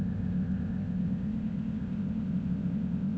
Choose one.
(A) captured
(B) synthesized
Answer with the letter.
B